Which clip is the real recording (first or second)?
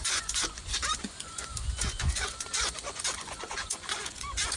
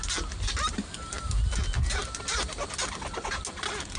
second